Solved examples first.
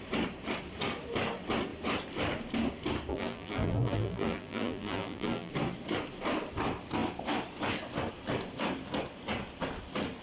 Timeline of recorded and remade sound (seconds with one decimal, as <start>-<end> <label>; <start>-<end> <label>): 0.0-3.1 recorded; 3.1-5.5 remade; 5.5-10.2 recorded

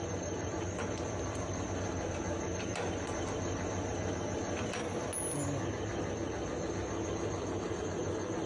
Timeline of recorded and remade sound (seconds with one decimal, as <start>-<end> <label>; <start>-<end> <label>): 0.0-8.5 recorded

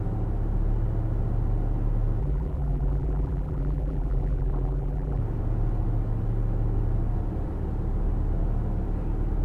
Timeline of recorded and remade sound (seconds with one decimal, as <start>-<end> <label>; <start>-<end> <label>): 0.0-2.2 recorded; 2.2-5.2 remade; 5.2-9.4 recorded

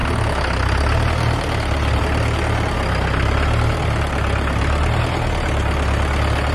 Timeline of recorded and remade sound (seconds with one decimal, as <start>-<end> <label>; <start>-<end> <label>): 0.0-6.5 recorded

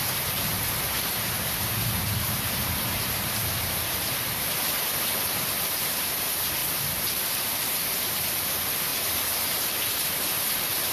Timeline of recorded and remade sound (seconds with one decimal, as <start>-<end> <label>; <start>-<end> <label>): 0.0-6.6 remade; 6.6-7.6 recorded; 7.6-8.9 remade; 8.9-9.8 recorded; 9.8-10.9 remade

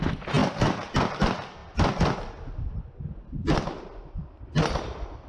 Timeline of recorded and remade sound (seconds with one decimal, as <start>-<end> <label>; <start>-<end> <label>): 0.0-5.3 recorded